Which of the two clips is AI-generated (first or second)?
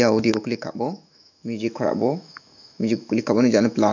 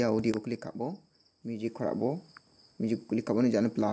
first